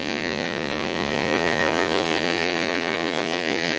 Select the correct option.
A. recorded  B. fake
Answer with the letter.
B